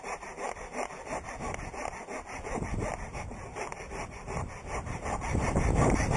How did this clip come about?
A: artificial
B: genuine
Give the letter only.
B